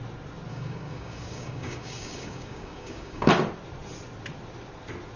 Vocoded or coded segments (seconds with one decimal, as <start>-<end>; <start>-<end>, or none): 0.5-3.3